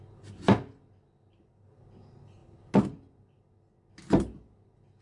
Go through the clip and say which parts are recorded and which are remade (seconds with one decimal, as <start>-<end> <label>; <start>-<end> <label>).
0.0-5.0 recorded

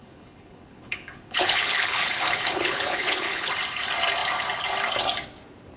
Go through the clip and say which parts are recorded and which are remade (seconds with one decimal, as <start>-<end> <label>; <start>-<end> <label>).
0.0-3.5 remade; 3.5-5.8 recorded

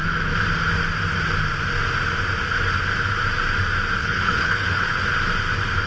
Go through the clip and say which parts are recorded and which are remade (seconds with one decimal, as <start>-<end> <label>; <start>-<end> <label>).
0.0-4.0 recorded; 4.0-5.0 remade; 5.0-5.9 recorded

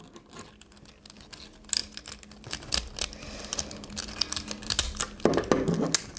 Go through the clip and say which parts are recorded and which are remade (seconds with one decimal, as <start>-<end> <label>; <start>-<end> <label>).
0.0-6.2 recorded

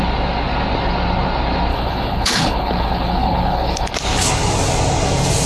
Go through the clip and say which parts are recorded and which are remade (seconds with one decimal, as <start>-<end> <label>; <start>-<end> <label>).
0.0-1.7 recorded; 1.7-3.9 remade; 3.9-5.5 recorded

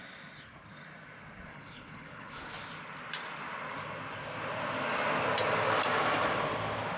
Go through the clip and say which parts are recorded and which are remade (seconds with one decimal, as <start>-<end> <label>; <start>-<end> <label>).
0.0-1.5 recorded; 1.5-2.4 remade; 2.4-7.0 recorded